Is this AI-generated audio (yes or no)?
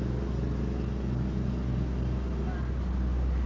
no